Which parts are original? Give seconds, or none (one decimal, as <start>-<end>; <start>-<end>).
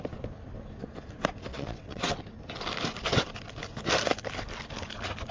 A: 0.0-1.5; 2.2-5.3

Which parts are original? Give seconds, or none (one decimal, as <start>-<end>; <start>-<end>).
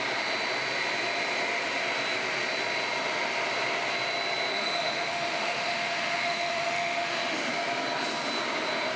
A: 0.0-4.5; 7.5-9.0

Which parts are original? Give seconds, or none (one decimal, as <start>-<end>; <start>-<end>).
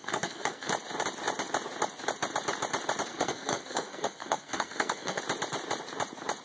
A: 0.7-3.1; 5.2-6.4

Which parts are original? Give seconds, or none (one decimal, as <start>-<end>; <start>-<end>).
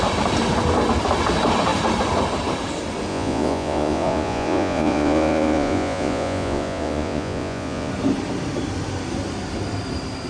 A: 0.0-3.1; 7.9-10.3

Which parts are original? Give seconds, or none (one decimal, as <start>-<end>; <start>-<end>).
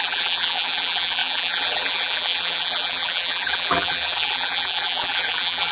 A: none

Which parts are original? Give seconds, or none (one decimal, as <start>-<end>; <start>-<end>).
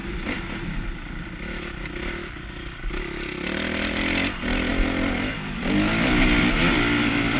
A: 0.0-7.4